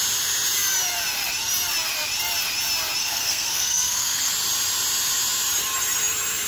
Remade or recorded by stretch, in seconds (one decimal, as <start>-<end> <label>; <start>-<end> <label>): 0.0-3.0 recorded; 3.0-4.3 remade; 4.3-6.5 recorded